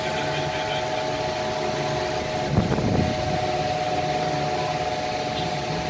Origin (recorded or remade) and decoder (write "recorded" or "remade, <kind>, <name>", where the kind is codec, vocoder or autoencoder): recorded